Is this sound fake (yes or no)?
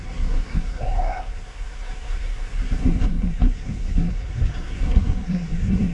yes